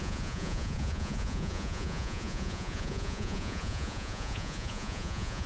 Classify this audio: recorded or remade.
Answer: remade